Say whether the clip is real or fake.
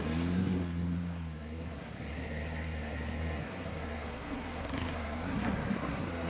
fake